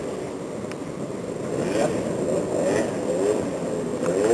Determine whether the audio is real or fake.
real